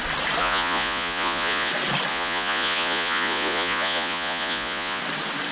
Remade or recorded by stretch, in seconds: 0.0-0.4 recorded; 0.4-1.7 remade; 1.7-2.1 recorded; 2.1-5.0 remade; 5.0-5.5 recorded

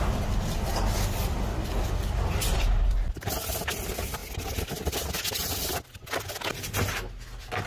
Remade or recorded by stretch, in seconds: 0.0-2.5 recorded; 2.5-3.3 remade; 3.3-7.7 recorded

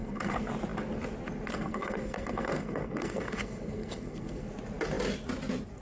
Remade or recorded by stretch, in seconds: 0.0-0.5 remade; 0.5-1.5 recorded; 1.5-4.5 remade; 4.5-5.8 recorded

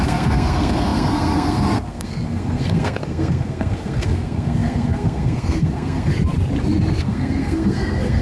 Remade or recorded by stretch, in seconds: 0.0-6.1 remade; 6.1-7.0 recorded; 7.0-8.2 remade

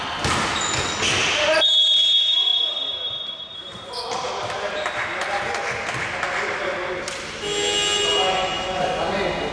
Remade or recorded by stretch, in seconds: 0.0-9.5 recorded